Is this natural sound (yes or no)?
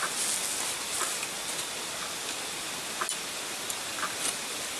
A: yes